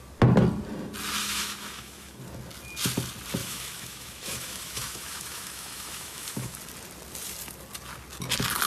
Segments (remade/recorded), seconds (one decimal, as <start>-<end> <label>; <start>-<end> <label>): 0.0-1.2 recorded; 1.2-2.2 remade; 2.2-3.4 recorded; 3.4-6.6 remade; 6.6-8.7 recorded